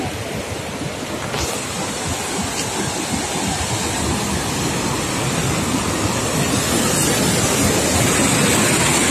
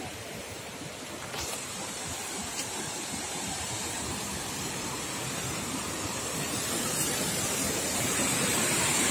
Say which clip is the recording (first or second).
first